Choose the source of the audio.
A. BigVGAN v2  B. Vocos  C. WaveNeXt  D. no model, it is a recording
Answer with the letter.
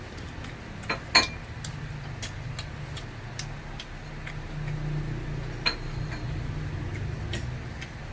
D